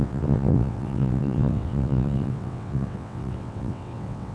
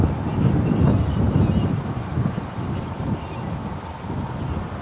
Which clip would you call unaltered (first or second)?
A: second